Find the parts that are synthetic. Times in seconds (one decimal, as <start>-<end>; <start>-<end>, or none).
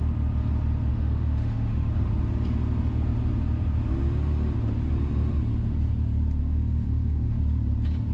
0.9-1.9; 6.4-7.4